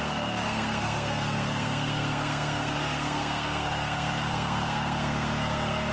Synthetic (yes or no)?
yes